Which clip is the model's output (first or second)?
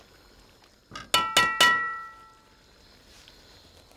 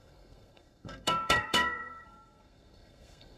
second